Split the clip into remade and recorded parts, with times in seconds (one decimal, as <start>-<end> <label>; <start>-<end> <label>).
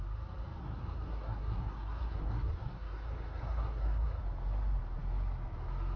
0.0-0.6 recorded; 0.6-4.2 remade; 4.2-6.0 recorded